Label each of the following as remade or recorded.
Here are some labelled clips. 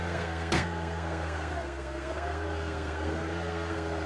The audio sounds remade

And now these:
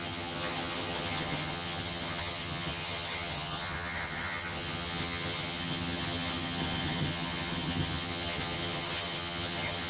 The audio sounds remade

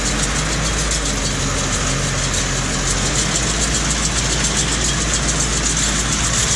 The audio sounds recorded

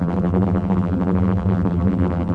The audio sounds remade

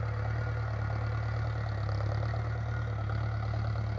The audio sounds recorded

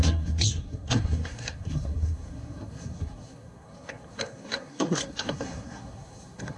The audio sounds remade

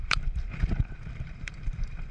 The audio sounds remade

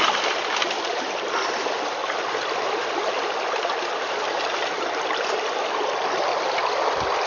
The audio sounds recorded